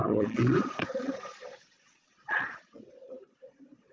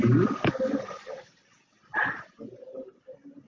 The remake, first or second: first